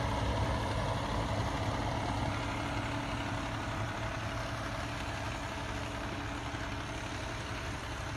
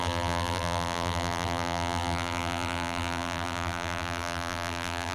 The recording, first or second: first